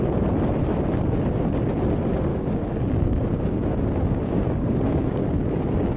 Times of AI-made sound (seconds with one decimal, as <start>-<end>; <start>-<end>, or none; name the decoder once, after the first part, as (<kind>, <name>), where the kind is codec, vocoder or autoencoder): 2.3-6.0 (codec, DAC)